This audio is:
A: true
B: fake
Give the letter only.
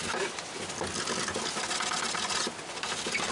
A